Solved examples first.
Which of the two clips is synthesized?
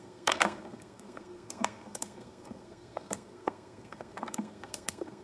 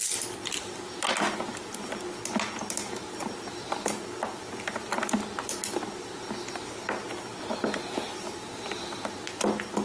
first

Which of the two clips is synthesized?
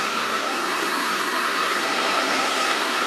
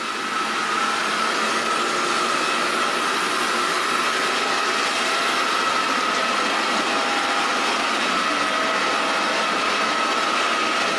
first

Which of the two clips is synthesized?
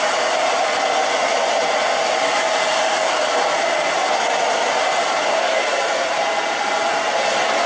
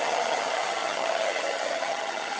second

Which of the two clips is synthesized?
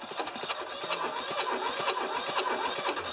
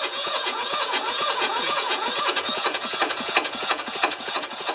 second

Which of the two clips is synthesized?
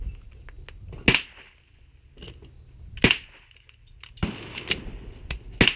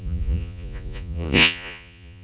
second